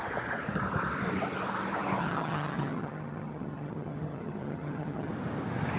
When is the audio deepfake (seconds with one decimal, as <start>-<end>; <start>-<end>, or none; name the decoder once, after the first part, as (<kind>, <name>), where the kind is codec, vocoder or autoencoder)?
2.0-5.1 (vocoder, HiFi-GAN)